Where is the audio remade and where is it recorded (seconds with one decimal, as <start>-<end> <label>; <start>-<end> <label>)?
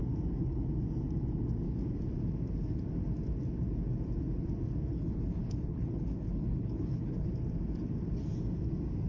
0.0-4.9 recorded; 4.9-7.3 remade; 7.3-9.1 recorded